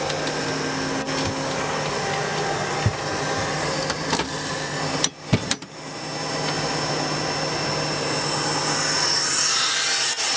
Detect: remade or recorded recorded